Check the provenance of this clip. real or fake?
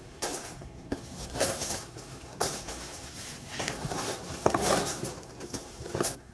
fake